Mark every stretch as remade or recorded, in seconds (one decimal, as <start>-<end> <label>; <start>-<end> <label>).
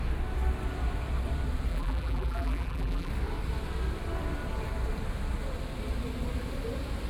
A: 0.0-1.7 recorded; 1.7-3.1 remade; 3.1-7.1 recorded